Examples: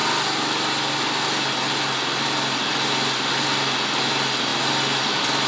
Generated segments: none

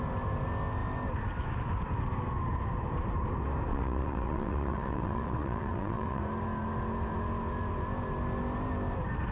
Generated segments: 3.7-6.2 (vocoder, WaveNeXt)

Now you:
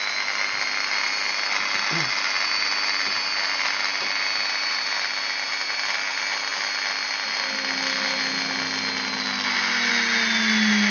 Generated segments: none

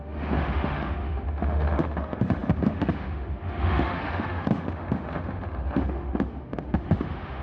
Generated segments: 0.0-7.4 (autoencoder, DAC-VAE)